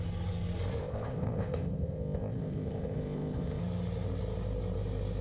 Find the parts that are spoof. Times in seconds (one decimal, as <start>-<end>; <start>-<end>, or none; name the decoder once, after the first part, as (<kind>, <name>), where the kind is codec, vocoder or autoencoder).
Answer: 0.8-3.6 (codec, ZipCodec)